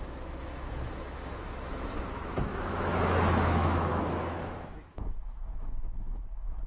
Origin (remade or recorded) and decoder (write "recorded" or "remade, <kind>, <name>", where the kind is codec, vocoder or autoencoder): remade, autoencoder, DAC-VAE